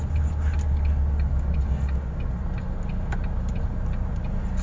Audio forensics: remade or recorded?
recorded